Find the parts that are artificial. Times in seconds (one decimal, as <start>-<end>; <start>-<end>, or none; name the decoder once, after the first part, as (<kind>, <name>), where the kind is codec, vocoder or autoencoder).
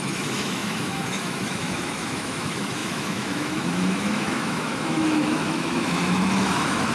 0.0-6.9 (autoencoder, DAC-VAE)